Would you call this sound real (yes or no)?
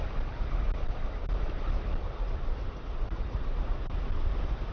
yes